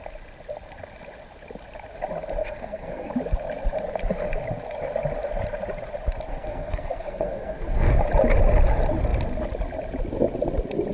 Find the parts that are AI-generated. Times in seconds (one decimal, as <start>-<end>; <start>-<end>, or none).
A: 2.4-3.1; 6.3-7.9